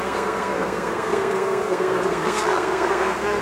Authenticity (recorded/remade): remade